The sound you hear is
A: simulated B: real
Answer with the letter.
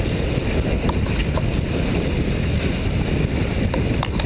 B